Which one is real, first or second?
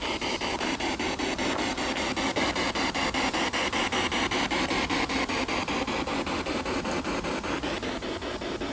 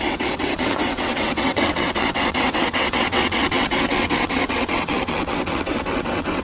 first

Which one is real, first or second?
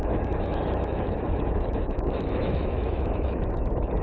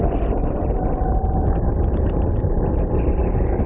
second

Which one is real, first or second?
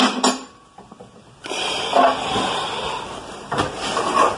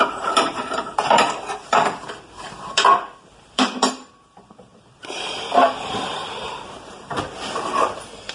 first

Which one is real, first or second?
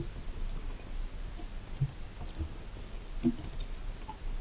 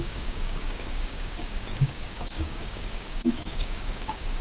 first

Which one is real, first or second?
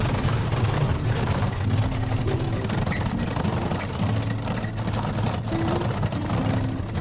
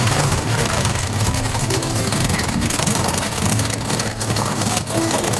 first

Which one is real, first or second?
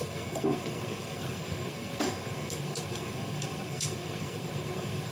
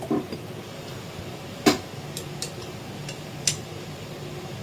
second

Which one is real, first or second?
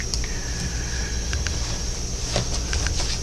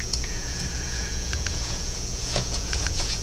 first